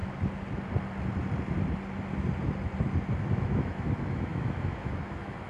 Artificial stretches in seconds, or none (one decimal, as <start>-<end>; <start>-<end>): 3.3-5.5